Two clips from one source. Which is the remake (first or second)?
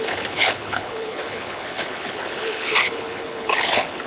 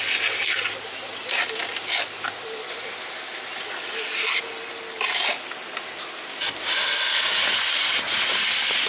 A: first